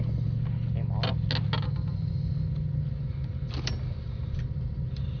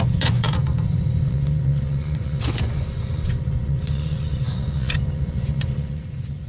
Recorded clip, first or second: first